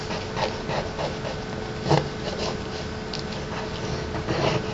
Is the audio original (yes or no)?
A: yes